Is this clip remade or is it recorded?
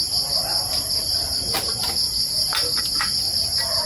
recorded